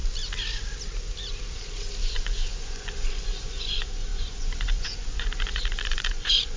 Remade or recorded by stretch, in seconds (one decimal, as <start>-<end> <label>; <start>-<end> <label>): 0.0-2.0 recorded; 2.0-6.6 remade